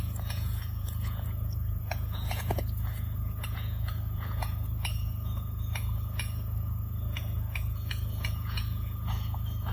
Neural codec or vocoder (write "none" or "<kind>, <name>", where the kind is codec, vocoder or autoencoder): vocoder, Vocos